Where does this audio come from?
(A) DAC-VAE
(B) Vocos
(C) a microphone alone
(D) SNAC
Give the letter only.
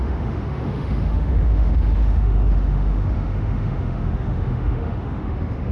A